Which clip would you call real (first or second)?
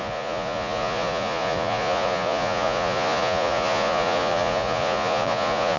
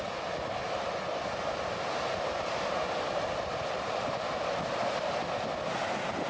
second